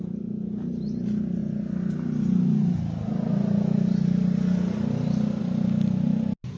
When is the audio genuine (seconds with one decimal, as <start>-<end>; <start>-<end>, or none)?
0.0-6.6